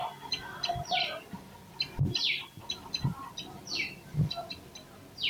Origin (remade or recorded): recorded